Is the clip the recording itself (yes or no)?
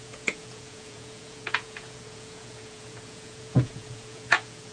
no